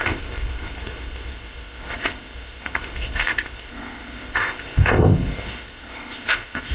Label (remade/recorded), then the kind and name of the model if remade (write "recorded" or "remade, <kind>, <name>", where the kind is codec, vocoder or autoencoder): remade, codec, ZipCodec